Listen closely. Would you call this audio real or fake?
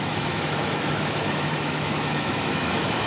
fake